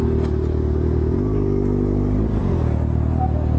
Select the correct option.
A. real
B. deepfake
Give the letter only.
A